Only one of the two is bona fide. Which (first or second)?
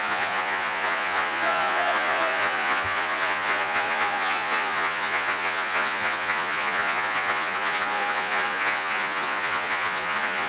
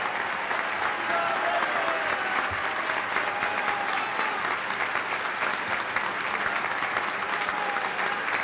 second